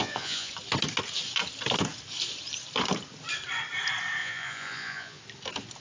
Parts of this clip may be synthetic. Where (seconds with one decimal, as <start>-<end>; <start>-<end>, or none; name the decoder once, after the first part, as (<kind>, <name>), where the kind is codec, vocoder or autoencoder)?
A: 0.0-0.5 (vocoder, Vocos); 4.2-5.2